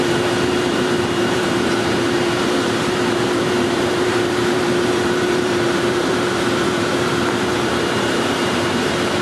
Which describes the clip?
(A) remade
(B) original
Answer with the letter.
A